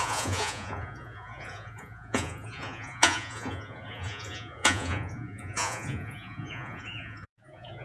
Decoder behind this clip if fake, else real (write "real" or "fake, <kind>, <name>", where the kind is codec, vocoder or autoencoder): fake, vocoder, Vocos